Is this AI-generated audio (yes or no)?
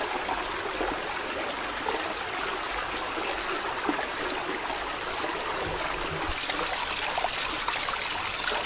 no